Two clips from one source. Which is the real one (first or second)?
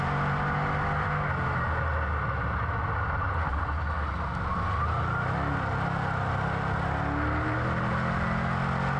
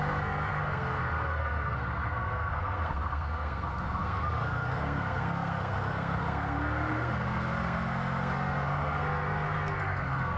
first